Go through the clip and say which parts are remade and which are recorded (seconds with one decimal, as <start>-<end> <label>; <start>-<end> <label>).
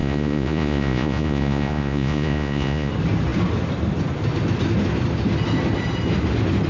0.0-2.9 remade; 2.9-6.7 recorded